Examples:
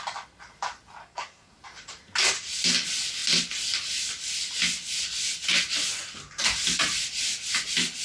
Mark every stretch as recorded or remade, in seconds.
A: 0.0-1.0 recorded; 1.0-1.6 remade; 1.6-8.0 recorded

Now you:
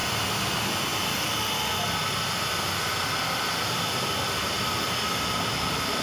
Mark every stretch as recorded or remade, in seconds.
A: 0.0-0.9 recorded; 0.9-4.5 remade; 4.5-6.0 recorded